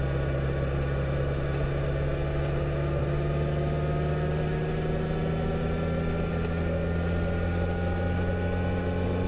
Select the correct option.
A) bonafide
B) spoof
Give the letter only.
A